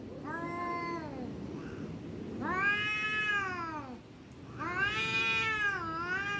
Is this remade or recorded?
recorded